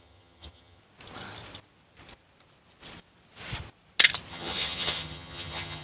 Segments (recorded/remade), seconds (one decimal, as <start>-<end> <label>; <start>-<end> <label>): 0.0-0.8 remade; 0.8-4.3 recorded; 4.3-5.8 remade